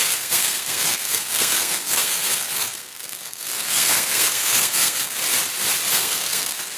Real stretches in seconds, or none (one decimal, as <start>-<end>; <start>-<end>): 5.2-5.9